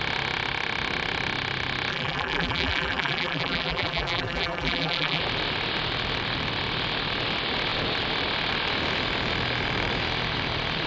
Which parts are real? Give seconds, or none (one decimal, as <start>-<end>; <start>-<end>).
0.0-1.9; 5.2-10.9